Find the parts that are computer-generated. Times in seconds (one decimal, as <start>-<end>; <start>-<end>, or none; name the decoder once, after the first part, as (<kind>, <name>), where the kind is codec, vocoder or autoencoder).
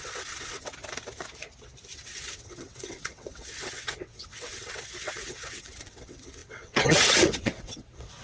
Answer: 0.0-0.7 (vocoder, WaveNeXt); 1.9-8.2